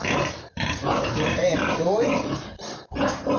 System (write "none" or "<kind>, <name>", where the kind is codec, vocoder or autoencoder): vocoder, BigVGAN v2